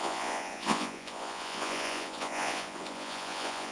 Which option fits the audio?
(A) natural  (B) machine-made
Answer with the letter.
B